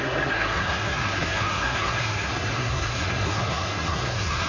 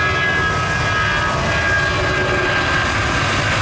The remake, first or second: first